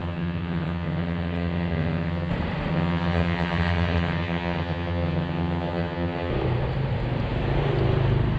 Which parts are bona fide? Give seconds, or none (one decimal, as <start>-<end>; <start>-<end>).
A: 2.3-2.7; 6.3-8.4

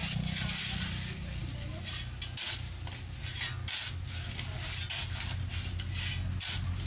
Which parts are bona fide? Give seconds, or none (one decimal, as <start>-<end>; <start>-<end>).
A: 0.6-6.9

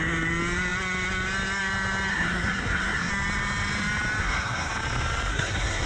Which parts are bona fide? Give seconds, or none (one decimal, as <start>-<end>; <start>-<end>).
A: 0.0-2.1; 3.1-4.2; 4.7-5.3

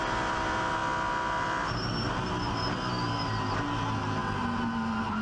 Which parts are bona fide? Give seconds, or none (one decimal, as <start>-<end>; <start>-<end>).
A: 0.0-5.2

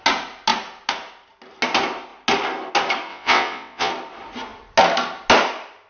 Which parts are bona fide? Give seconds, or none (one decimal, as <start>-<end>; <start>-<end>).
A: 0.0-3.1; 3.9-5.9

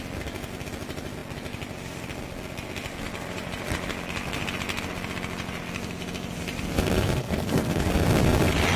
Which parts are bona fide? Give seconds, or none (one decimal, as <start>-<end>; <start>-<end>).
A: 0.0-7.2; 7.9-8.8

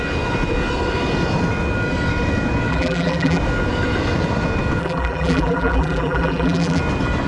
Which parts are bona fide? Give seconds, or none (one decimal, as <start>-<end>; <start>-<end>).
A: 0.0-2.7; 3.4-4.8; 6.8-7.3

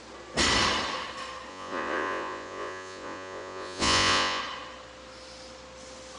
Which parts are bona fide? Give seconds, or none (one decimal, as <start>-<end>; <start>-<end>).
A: 0.0-1.5; 4.4-6.2